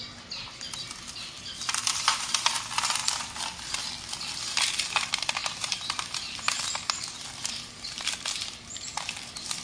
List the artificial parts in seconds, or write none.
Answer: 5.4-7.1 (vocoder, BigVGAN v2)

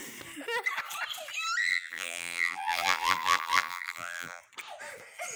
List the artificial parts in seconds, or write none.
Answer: 1.7-4.4 (vocoder, BigVGAN v2)

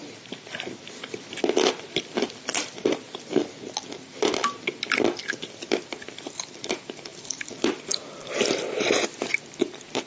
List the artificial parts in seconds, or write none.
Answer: 5.2-10.1 (vocoder, BigVGAN v2)

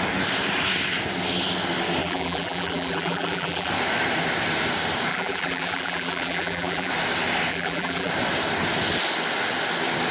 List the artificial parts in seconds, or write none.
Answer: 2.0-3.7 (vocoder, BigVGAN v2); 5.1-6.9; 7.5-8.1

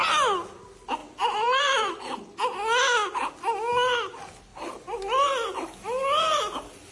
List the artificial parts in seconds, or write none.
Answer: 1.0-2.0 (vocoder, BigVGAN v2); 4.5-5.0

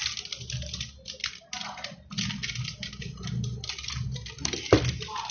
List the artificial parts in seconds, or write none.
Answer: none

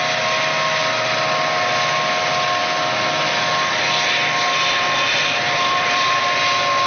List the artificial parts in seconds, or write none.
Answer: 0.8-1.4 (vocoder, BigVGAN v2); 4.2-6.2